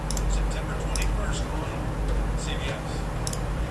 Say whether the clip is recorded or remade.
recorded